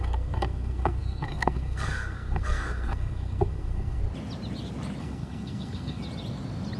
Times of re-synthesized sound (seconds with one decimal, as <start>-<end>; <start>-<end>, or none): 0.0-4.0; 5.0-6.0